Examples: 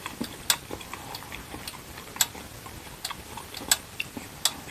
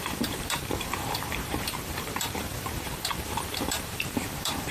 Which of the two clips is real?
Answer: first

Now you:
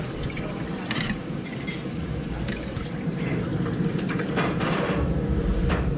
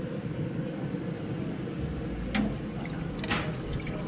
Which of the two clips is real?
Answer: second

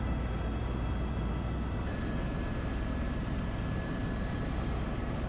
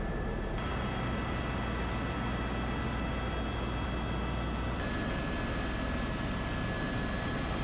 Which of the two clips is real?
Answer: second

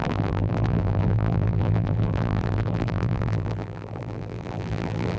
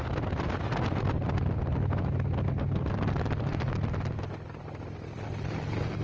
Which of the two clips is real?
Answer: second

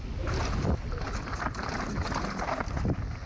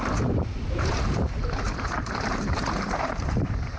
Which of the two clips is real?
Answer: first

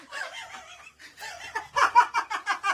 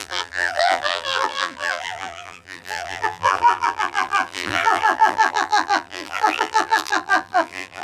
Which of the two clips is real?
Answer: first